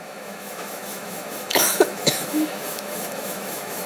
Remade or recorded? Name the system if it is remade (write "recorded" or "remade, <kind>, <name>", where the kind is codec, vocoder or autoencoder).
remade, autoencoder, DAC-VAE